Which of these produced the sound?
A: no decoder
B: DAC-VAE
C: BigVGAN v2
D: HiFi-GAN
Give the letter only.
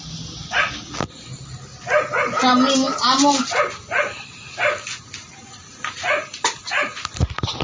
A